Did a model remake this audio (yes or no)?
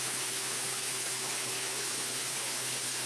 yes